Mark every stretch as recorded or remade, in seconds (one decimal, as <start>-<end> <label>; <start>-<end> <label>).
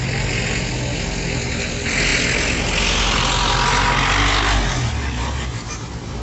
0.0-6.2 recorded